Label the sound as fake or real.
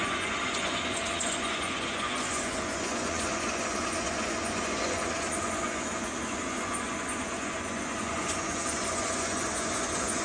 fake